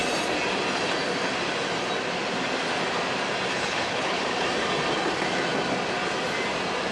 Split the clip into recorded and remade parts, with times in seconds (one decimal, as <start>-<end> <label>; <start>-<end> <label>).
0.0-3.5 recorded; 3.5-4.2 remade; 4.2-6.9 recorded